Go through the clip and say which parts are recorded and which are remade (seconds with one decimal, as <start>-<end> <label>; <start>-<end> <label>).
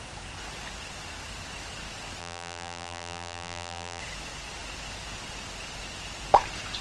0.0-2.2 recorded; 2.2-4.0 remade; 4.0-6.8 recorded